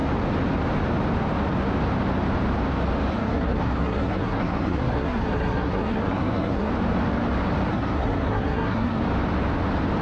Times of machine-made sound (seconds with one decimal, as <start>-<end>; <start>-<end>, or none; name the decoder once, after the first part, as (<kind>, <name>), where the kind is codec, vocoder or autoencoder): 3.1-6.7 (codec, SNAC); 7.7-9.0